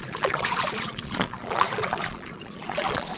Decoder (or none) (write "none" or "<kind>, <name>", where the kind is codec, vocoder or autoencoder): vocoder, Vocos